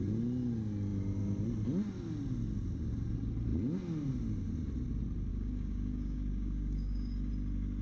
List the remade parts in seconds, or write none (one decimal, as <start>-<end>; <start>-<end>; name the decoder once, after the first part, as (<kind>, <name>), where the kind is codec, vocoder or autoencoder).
5.3-7.3 (codec, DAC)

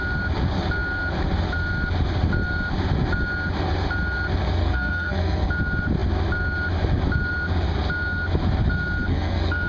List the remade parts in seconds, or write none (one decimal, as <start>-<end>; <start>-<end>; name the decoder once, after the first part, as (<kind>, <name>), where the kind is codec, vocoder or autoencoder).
4.6-5.5 (codec, SNAC); 9.1-9.7

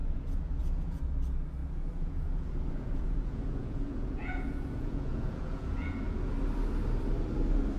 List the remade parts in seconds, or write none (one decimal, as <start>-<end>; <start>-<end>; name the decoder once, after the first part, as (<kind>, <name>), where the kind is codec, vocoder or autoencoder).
0.0-1.0 (vocoder, Vocos); 1.6-6.3

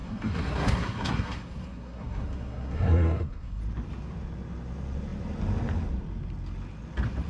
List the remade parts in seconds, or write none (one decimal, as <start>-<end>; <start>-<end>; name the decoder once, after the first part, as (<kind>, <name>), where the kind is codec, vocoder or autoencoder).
0.0-3.6 (codec, SNAC)

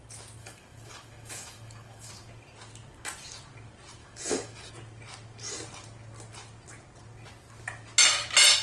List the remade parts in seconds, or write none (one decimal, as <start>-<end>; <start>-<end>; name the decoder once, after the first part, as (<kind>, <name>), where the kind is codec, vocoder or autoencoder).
0.4-2.1 (autoencoder, DAC-VAE); 4.0-4.7

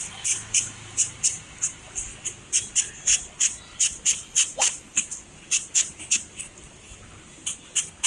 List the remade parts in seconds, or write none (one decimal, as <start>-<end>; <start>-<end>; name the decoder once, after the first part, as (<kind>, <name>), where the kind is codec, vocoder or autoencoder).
none